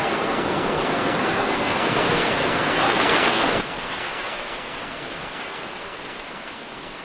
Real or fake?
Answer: fake